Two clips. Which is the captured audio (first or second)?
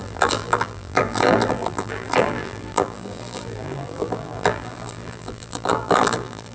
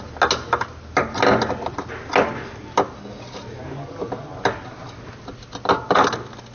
second